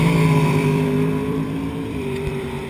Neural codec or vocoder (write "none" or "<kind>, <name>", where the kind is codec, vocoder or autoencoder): vocoder, BigVGAN v2